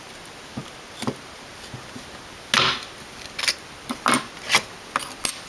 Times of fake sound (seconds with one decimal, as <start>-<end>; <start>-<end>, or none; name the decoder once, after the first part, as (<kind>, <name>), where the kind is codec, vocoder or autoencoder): none